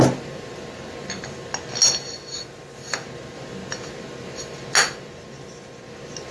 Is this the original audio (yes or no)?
yes